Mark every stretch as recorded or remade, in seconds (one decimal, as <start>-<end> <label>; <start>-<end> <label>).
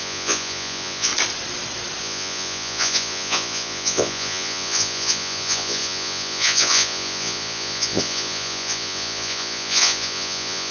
0.0-1.1 remade; 1.1-2.0 recorded; 2.0-10.7 remade